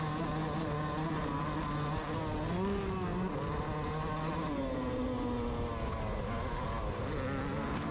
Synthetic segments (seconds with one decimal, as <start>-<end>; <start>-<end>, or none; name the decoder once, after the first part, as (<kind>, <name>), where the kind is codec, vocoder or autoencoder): none